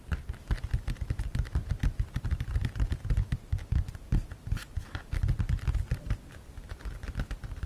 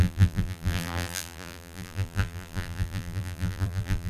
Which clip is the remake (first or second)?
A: second